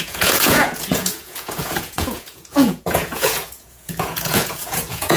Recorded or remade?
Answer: remade